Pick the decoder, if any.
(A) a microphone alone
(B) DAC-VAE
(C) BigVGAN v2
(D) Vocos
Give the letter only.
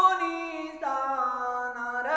A